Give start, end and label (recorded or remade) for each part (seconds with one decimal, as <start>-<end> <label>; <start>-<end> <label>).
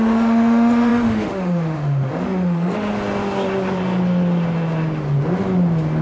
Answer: 0.0-2.9 remade; 2.9-6.0 recorded